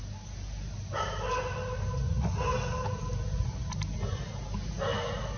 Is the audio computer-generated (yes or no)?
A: no